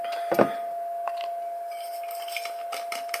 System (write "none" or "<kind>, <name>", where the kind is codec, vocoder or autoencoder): none